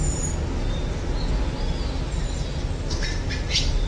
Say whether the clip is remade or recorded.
recorded